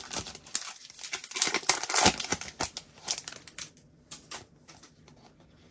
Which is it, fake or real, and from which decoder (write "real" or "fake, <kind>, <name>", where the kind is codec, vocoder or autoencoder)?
real